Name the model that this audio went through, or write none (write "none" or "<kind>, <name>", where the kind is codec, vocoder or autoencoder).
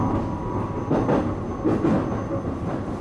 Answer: none